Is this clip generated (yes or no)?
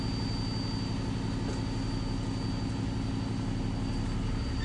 no